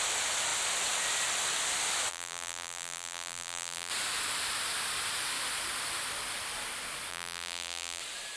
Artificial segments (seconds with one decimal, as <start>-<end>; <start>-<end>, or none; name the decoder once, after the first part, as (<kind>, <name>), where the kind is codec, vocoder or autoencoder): 2.1-3.9 (vocoder, BigVGAN v2); 7.1-8.0